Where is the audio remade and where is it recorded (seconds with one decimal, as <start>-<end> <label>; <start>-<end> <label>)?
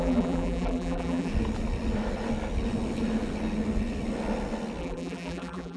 0.0-1.3 remade; 1.3-4.8 recorded; 4.8-5.8 remade